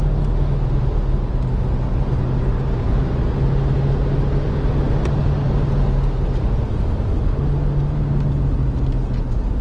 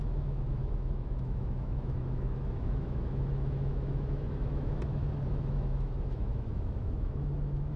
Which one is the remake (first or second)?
second